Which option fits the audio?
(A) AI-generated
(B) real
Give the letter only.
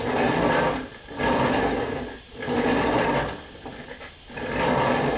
B